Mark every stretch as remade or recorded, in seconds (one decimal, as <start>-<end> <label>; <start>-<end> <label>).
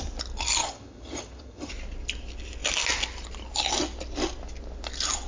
0.0-0.6 recorded; 0.6-1.7 remade; 1.7-5.3 recorded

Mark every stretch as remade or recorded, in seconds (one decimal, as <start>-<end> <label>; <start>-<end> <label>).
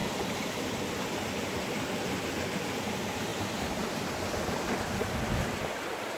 0.0-6.2 recorded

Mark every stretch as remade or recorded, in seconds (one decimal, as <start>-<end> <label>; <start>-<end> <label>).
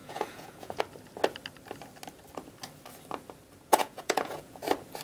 0.0-0.8 remade; 0.8-3.7 recorded; 3.7-4.6 remade; 4.6-5.0 recorded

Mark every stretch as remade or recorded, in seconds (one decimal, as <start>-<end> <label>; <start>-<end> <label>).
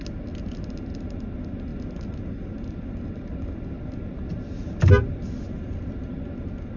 0.0-6.8 recorded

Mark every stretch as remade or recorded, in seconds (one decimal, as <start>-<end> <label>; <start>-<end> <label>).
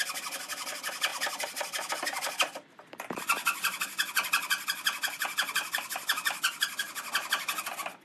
0.0-8.0 recorded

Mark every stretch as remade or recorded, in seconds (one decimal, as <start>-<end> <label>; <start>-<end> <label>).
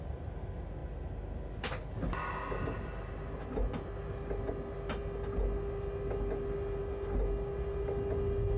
0.0-8.6 recorded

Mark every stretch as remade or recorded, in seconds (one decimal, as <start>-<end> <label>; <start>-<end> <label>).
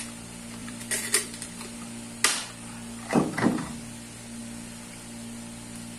0.0-0.6 recorded; 0.6-1.5 remade; 1.5-6.0 recorded